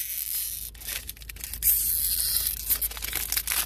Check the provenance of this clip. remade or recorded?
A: recorded